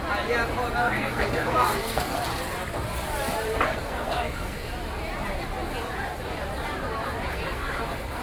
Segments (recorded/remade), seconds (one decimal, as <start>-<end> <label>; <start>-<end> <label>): 0.0-0.8 recorded; 0.8-2.2 remade; 2.2-3.7 recorded; 3.7-4.7 remade; 4.7-7.3 recorded; 7.3-8.2 remade